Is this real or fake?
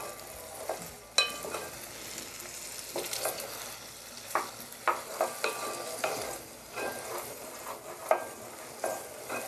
real